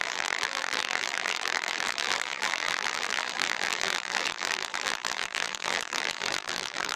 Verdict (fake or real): fake